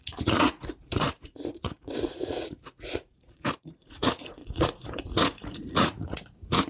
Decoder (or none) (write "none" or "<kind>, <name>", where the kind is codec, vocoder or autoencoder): vocoder, Vocos